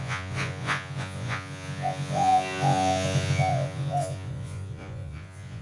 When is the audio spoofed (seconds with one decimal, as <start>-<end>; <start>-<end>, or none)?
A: 0.0-5.6